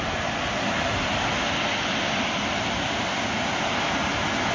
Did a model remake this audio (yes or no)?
no